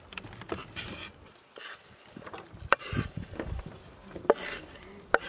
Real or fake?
real